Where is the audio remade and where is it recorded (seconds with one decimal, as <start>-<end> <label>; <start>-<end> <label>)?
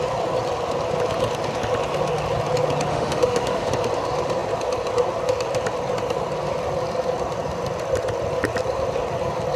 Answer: 0.0-2.9 recorded; 2.9-3.7 remade; 3.7-9.6 recorded